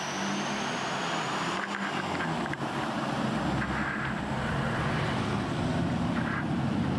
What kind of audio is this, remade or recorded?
recorded